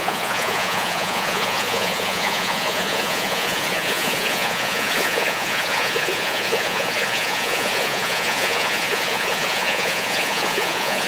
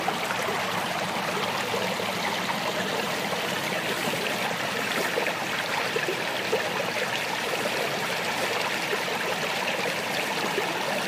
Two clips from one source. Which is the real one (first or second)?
second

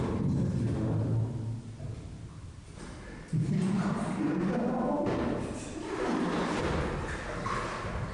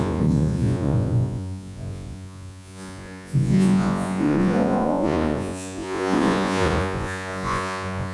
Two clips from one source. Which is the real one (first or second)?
first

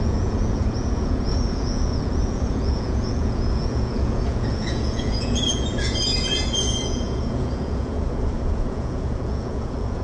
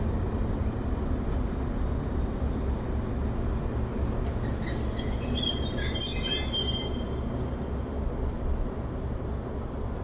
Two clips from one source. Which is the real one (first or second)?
second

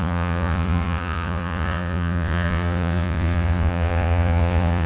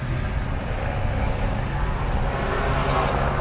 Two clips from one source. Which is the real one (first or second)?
second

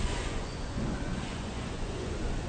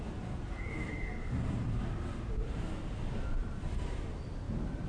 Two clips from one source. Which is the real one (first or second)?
second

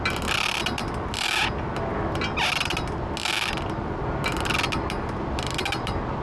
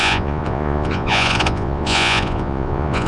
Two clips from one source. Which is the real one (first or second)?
first